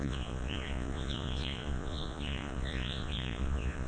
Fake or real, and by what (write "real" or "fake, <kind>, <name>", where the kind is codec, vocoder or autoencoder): fake, vocoder, Vocos